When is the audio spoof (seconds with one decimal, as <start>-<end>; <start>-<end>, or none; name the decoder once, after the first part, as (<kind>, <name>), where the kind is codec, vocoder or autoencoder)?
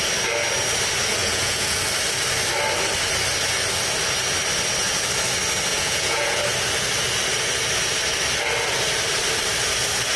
1.2-1.8 (vocoder, Vocos); 5.7-6.4